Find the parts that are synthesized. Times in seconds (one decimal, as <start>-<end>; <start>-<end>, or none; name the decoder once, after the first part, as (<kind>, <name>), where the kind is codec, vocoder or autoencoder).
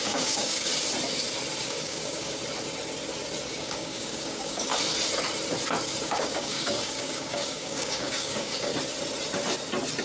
0.0-0.7 (codec, DAC); 1.6-2.4; 3.5-4.7; 6.0-8.7